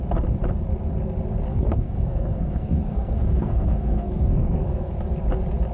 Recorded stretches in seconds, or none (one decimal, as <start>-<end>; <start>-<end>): 0.0-1.5; 4.9-5.7